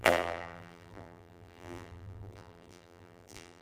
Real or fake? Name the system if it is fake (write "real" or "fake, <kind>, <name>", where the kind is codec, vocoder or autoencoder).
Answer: fake, vocoder, BigVGAN v2